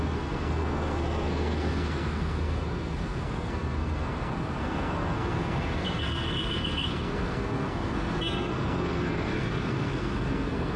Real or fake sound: fake